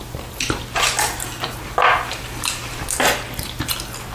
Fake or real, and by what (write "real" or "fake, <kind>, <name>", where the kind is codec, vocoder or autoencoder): real